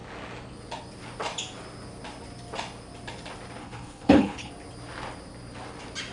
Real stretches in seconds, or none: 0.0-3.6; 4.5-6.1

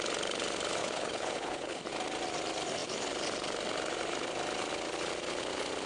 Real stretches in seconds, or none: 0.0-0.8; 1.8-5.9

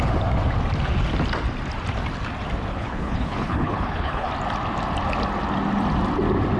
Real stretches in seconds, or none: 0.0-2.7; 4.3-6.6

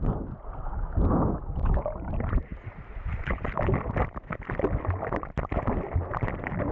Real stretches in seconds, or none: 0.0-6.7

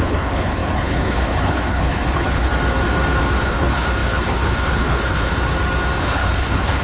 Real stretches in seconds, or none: 2.5-3.4; 5.3-6.0

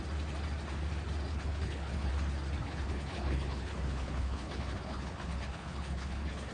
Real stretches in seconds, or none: 0.0-1.3; 2.1-2.6

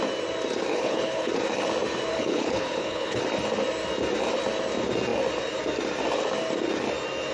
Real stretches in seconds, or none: 0.0-0.7; 1.3-2.1; 3.2-7.3

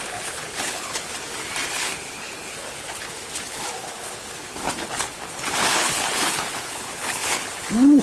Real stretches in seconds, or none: 1.1-1.7